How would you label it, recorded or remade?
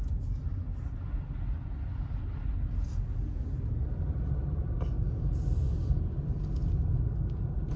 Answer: recorded